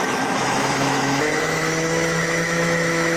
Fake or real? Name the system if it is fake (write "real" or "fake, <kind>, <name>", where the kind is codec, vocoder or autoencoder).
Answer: fake, autoencoder, DAC-VAE